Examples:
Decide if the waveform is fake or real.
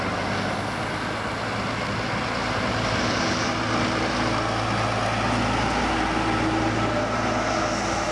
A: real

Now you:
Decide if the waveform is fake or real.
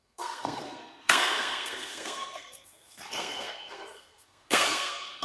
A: fake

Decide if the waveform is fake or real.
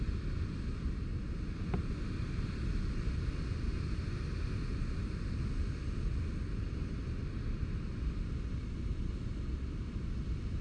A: real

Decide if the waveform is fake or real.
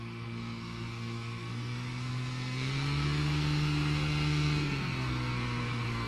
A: fake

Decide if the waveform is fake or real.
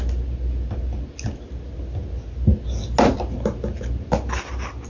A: real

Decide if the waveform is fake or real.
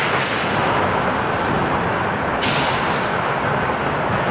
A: real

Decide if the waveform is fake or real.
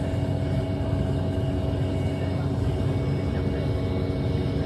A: real